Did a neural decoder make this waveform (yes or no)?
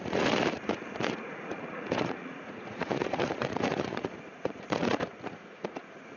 yes